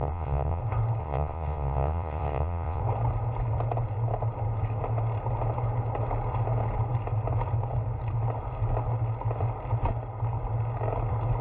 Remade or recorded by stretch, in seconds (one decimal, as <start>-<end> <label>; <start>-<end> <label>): 0.0-0.6 remade; 0.6-1.0 recorded; 1.0-2.8 remade; 2.8-11.4 recorded